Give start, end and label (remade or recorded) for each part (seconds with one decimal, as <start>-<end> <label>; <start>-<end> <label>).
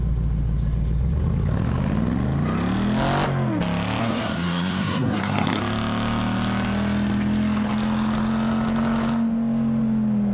0.0-4.0 recorded; 4.0-5.6 remade; 5.6-10.3 recorded